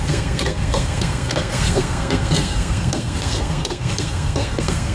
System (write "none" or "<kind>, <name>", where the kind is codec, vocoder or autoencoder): codec, SNAC